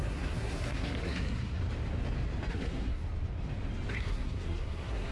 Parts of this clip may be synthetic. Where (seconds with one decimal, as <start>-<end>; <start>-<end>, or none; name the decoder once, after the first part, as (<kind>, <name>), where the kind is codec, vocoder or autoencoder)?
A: 0.0-1.6 (codec, SNAC); 2.5-3.0; 3.9-5.1